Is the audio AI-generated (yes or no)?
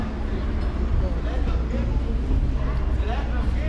no